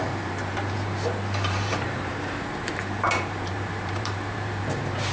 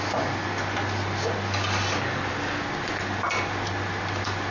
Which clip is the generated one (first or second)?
first